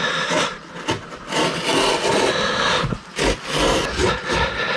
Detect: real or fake real